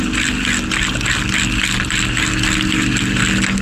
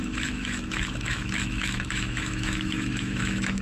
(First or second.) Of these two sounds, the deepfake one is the second